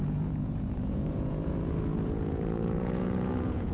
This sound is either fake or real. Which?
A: fake